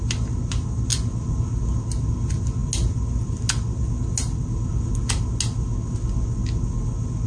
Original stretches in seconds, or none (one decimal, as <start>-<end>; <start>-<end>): 0.0-7.3